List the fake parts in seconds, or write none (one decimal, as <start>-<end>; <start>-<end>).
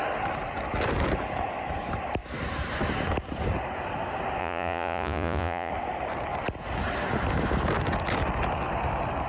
4.4-5.7